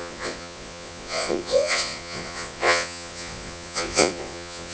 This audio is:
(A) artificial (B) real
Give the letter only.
A